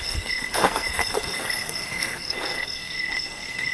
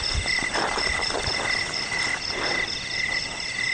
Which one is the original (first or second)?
second